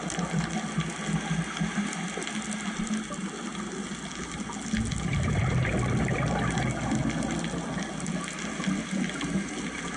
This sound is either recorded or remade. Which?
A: recorded